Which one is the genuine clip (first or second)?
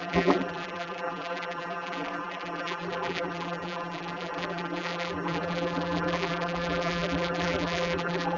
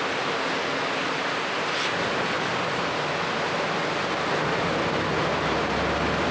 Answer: second